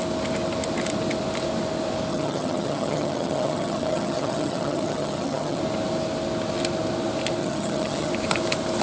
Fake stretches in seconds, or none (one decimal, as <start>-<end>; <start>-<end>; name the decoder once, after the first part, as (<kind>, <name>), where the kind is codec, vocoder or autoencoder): 2.1-5.6 (vocoder, HiFi-GAN); 7.4-8.1